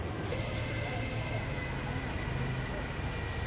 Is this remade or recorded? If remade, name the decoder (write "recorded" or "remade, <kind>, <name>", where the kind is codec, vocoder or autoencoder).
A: recorded